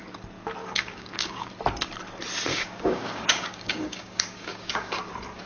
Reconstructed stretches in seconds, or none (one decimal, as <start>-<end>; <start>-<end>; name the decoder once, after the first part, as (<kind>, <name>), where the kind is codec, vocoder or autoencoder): 0.6-1.5 (codec, DAC); 2.5-5.0